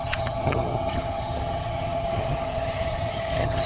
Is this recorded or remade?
remade